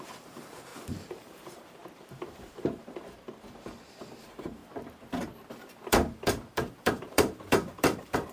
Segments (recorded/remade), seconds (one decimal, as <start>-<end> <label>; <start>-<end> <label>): 0.0-0.7 remade; 0.7-1.2 recorded; 1.2-4.6 remade; 4.6-5.9 recorded; 5.9-8.3 remade